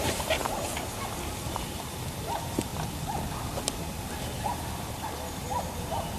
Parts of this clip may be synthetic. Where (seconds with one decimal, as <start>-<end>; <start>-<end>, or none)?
0.0-0.4; 1.5-2.7; 4.1-6.2